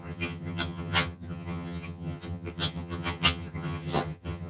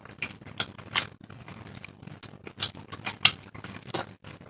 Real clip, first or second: second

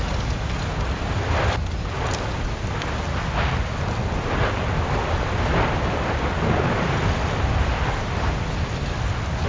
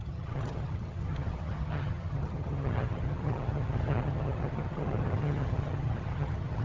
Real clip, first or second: first